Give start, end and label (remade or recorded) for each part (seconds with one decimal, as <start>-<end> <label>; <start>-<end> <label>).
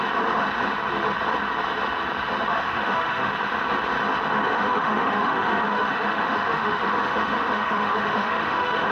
0.0-2.5 recorded; 2.5-3.3 remade; 3.3-4.4 recorded; 4.4-8.9 remade